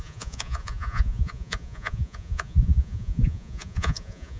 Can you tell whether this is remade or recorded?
remade